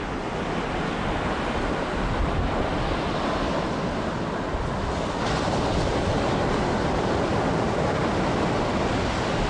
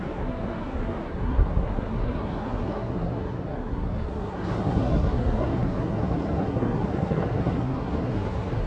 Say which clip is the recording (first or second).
first